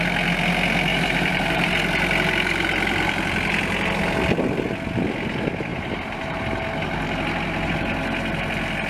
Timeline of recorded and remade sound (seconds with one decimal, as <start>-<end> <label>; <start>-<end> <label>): 0.0-0.9 recorded; 0.9-1.7 remade; 1.7-5.7 recorded; 5.7-6.4 remade; 6.4-8.9 recorded